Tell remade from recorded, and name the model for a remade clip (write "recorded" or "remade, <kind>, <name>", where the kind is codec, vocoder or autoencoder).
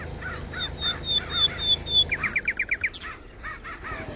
recorded